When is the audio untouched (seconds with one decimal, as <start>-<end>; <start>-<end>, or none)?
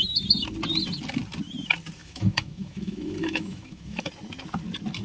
0.0-2.0; 4.1-5.0